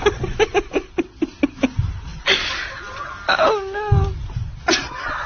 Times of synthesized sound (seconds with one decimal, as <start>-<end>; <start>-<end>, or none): none